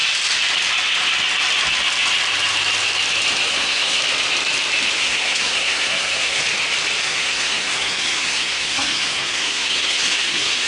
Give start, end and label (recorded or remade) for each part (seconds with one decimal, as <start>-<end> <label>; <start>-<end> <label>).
0.0-3.5 recorded; 3.5-4.0 remade; 4.0-5.0 recorded; 5.0-6.4 remade; 6.4-7.0 recorded; 7.0-10.7 remade